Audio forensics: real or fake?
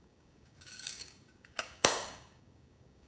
fake